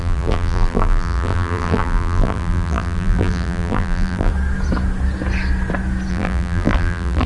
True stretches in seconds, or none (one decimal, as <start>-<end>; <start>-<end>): 4.3-6.1